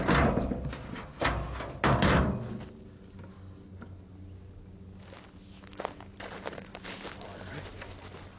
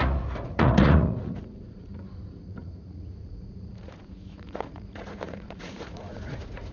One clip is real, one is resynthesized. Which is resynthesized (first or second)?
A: second